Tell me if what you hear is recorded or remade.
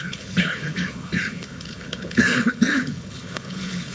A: remade